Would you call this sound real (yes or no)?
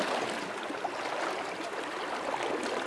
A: yes